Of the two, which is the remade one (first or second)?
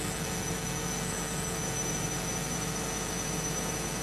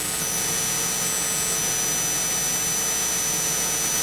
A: first